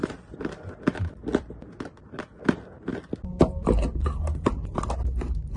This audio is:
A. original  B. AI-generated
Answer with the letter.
A